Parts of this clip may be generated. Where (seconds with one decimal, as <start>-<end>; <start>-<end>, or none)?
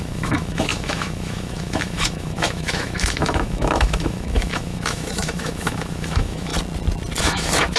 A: 0.0-6.5; 7.2-7.8